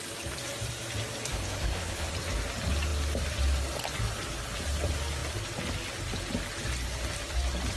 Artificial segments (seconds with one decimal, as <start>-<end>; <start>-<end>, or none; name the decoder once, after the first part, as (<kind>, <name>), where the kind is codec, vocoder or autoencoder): 1.3-2.1 (codec, HILCodec)